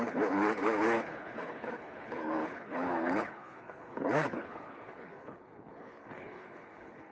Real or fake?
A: fake